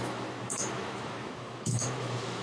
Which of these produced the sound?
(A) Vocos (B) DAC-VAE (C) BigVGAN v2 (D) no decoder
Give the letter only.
B